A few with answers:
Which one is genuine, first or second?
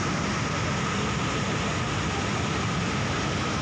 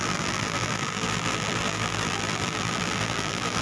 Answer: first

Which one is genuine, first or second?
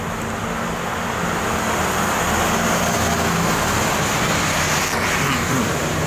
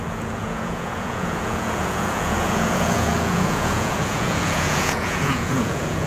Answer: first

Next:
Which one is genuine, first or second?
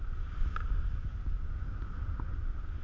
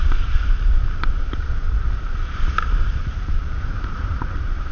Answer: first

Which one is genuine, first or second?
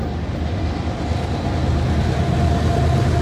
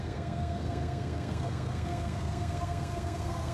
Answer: first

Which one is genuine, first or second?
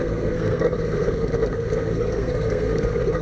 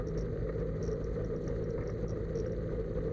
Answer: second